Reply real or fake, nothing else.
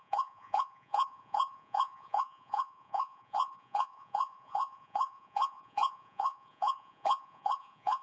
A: fake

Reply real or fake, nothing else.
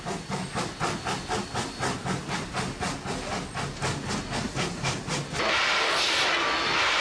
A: real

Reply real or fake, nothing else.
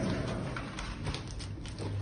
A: real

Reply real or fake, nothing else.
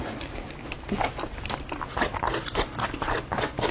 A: real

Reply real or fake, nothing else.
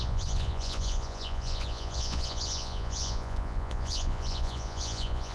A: fake